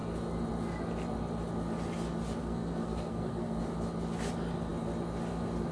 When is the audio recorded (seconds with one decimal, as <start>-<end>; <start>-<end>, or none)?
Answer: 0.0-2.4; 3.6-5.7